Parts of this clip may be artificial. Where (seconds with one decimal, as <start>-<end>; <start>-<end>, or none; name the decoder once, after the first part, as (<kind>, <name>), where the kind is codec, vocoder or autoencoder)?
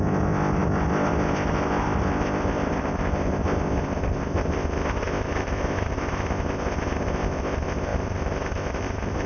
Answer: 0.0-9.3 (codec, ZipCodec)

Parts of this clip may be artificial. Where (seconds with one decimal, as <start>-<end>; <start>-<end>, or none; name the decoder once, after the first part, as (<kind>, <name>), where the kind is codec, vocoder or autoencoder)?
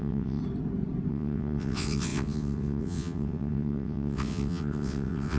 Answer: 0.0-0.4 (vocoder, WaveNeXt); 1.1-5.4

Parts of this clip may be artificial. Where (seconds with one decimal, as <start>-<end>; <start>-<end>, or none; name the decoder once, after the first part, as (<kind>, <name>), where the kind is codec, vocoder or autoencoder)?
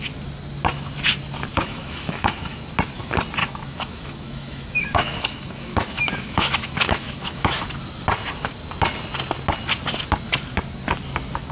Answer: 1.5-2.6 (autoencoder, DAC-VAE); 3.4-7.6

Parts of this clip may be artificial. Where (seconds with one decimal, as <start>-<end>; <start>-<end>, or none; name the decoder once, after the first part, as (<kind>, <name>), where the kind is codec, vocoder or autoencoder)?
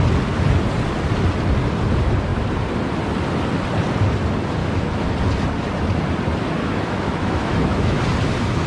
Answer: 4.6-5.1 (autoencoder, DAC-VAE); 6.6-8.0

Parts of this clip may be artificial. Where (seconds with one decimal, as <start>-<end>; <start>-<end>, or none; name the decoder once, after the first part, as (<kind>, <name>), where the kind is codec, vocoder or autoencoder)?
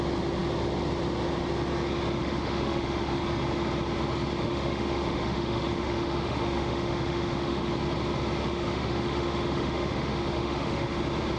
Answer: 2.2-3.2 (autoencoder, DAC-VAE); 4.4-7.7; 8.4-11.0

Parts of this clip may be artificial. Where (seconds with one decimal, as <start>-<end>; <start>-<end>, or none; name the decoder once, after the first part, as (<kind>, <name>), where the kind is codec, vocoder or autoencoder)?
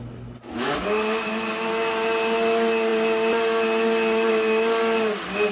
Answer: none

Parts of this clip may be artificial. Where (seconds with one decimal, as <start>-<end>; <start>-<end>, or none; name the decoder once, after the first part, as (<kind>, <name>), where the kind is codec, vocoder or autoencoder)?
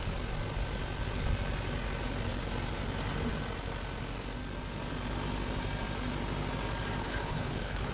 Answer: 7.0-7.9 (codec, HILCodec)